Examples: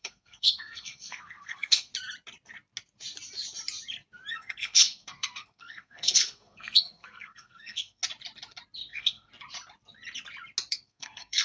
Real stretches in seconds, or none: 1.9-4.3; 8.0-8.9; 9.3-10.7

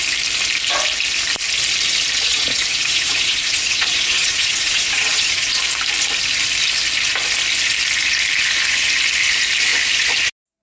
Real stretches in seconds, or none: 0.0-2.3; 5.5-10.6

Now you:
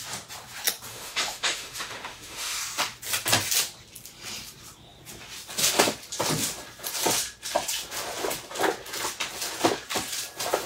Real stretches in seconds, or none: 0.0-0.9; 2.6-10.7